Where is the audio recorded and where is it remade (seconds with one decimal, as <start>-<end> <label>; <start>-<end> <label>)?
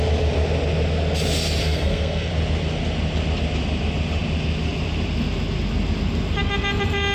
0.0-1.6 recorded; 1.6-2.3 remade; 2.3-7.1 recorded